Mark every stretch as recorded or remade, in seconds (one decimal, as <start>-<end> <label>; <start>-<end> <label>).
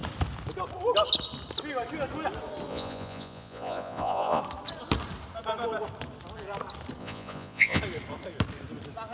0.0-2.7 recorded; 2.7-4.4 remade; 4.4-7.0 recorded; 7.0-7.8 remade; 7.8-9.1 recorded